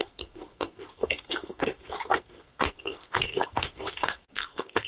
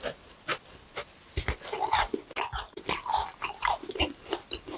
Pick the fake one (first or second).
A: first